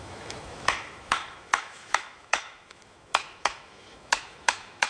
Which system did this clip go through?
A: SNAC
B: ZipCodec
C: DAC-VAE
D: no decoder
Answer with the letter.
C